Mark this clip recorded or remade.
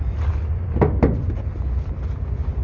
recorded